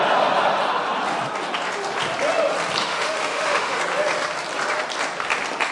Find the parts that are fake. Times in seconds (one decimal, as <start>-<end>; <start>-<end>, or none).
2.8-3.8